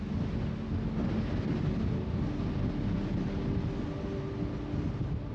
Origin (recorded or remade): recorded